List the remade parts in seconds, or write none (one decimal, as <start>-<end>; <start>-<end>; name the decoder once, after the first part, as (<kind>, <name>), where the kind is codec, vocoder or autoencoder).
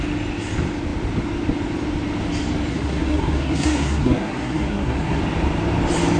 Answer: 2.7-5.2 (codec, SNAC)